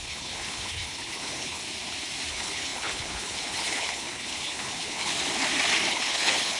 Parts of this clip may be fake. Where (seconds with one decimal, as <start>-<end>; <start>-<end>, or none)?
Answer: 0.0-1.6; 2.3-5.1; 5.9-6.6